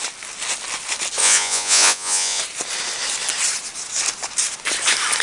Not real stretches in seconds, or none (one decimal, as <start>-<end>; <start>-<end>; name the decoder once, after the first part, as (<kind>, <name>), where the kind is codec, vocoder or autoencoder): 1.2-2.4 (vocoder, Vocos)